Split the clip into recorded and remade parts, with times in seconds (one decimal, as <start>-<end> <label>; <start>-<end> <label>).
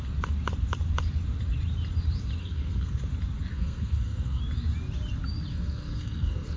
0.0-2.4 recorded; 2.4-3.0 remade; 3.0-3.5 recorded; 3.5-4.4 remade; 4.4-5.5 recorded; 5.5-6.6 remade